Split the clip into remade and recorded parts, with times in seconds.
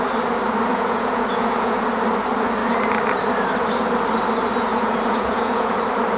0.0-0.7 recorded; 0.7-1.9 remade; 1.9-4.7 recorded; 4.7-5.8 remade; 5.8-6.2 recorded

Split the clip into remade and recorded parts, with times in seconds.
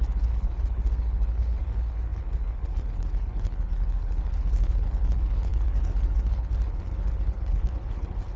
0.0-8.4 remade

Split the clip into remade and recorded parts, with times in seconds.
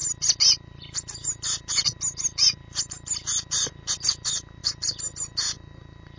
0.0-6.2 recorded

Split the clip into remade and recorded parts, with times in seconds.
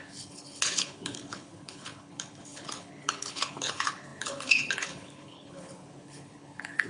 0.0-6.9 remade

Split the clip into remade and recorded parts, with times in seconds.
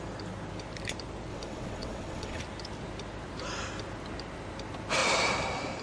0.0-1.3 recorded; 1.3-2.4 remade; 2.4-5.8 recorded